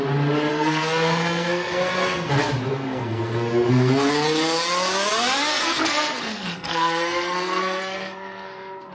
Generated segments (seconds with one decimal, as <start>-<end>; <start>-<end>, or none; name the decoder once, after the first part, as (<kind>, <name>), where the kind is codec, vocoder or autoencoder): 0.5-2.3 (codec, SNAC); 2.7-4.1; 5.5-8.9